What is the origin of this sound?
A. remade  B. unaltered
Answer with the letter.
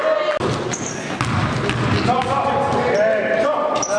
B